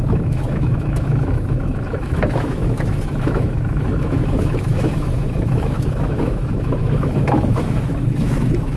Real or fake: fake